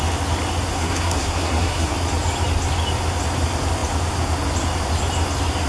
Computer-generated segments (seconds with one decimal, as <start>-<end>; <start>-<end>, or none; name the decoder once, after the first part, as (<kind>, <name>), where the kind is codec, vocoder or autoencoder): 0.7-1.9 (codec, SNAC)